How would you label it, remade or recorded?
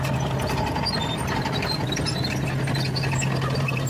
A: recorded